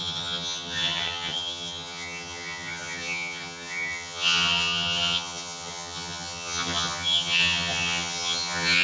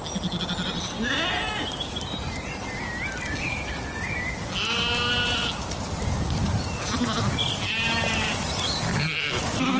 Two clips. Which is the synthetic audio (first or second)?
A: first